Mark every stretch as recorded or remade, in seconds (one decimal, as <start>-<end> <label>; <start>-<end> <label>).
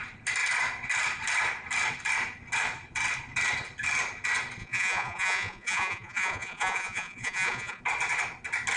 0.0-4.6 recorded; 4.6-7.8 remade; 7.8-8.8 recorded